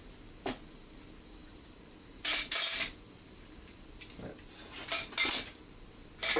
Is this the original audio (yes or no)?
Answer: yes